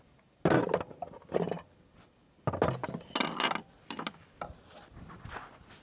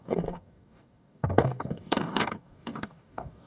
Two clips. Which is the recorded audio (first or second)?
first